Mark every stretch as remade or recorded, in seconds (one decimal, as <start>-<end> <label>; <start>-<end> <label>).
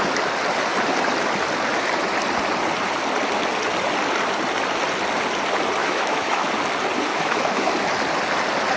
0.0-5.8 recorded; 5.8-6.5 remade; 6.5-7.1 recorded; 7.1-7.7 remade; 7.7-8.8 recorded